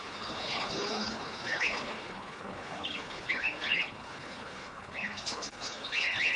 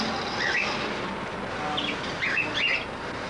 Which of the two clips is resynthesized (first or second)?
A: first